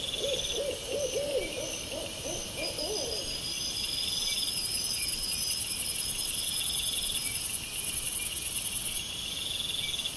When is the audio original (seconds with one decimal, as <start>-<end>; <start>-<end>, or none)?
0.0-10.2